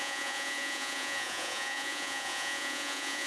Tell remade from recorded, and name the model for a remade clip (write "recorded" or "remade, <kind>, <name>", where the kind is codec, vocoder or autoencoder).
remade, vocoder, Vocos